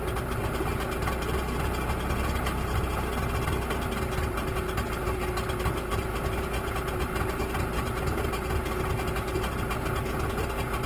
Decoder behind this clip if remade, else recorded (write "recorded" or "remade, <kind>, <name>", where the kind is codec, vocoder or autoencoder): recorded